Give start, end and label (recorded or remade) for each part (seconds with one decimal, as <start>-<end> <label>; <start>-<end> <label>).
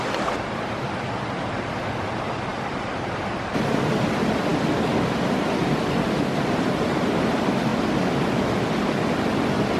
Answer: 0.0-9.8 recorded